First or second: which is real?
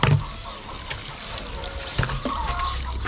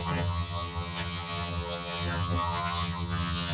first